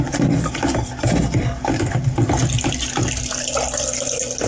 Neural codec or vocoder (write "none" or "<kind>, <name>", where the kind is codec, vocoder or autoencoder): none